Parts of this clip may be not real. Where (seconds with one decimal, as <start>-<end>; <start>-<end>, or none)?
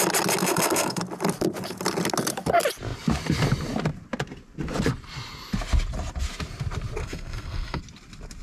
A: 0.4-1.0; 7.0-7.8